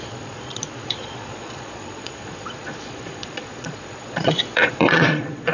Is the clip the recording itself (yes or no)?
no